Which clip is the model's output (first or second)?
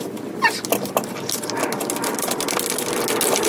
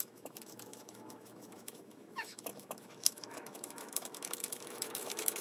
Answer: second